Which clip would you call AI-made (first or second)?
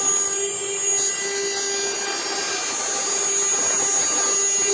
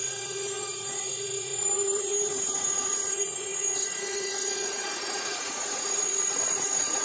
second